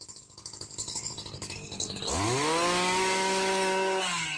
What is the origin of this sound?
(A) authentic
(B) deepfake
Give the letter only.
B